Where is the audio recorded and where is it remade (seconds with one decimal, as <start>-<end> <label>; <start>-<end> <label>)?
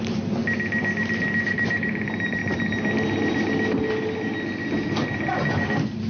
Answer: 0.0-0.4 remade; 0.4-1.5 recorded; 1.5-2.4 remade; 2.4-6.1 recorded